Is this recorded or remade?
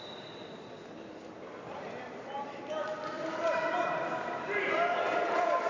remade